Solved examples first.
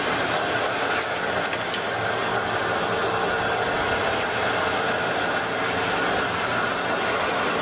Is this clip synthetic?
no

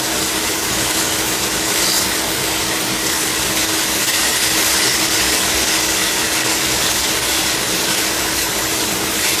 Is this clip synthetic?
yes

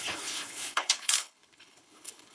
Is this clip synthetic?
yes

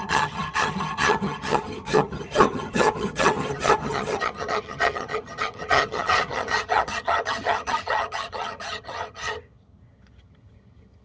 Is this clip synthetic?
yes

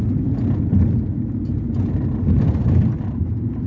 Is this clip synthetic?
no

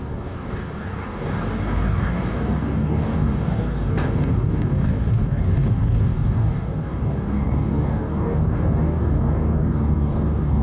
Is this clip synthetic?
yes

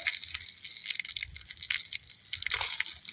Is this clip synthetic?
no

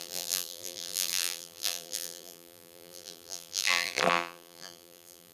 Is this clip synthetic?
yes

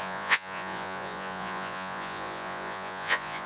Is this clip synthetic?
yes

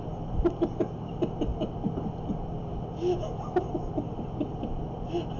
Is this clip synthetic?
no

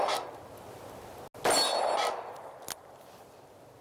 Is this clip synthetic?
no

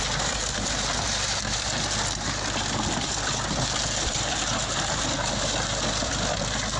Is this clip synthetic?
no